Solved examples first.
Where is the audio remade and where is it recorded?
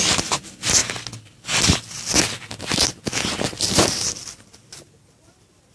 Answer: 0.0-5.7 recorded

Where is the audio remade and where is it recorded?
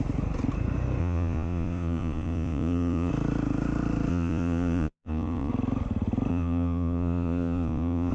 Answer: 0.0-1.0 recorded; 1.0-3.1 remade; 3.1-4.1 recorded; 4.1-5.5 remade; 5.5-6.3 recorded; 6.3-8.1 remade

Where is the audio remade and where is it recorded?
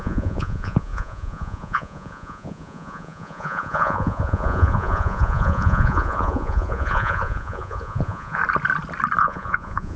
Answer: 0.0-8.4 remade; 8.4-9.2 recorded; 9.2-10.0 remade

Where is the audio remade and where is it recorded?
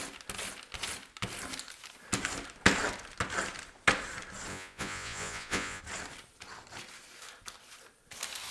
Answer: 0.0-4.5 recorded; 4.5-5.8 remade; 5.8-8.5 recorded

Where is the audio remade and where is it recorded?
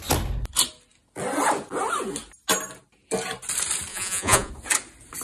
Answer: 0.0-3.9 recorded; 3.9-4.5 remade; 4.5-5.2 recorded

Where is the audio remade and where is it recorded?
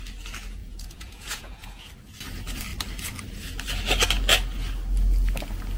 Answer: 0.0-0.6 recorded; 0.6-1.9 remade; 1.9-5.8 recorded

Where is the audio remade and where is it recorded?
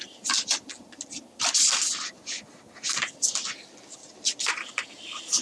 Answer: 0.0-4.0 recorded; 4.0-4.5 remade; 4.5-5.4 recorded